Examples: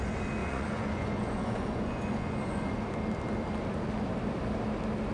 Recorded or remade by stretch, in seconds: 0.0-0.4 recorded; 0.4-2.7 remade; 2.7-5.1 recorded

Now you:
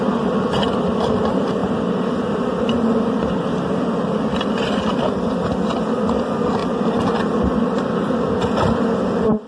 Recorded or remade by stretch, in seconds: 0.0-9.5 recorded

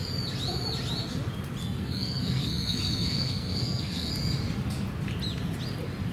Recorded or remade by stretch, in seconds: 0.0-1.6 recorded; 1.6-4.1 remade; 4.1-6.1 recorded

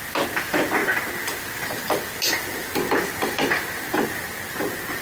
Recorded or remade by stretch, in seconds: 0.0-5.0 recorded

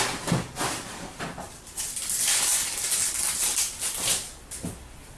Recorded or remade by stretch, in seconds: 0.0-2.5 remade; 2.5-3.3 recorded; 3.3-5.2 remade